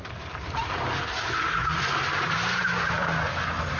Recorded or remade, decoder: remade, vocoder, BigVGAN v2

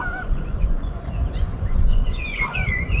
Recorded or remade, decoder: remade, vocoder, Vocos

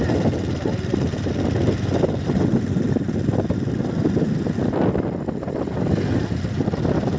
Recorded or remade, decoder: recorded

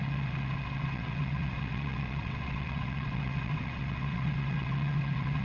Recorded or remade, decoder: remade, vocoder, WaveNeXt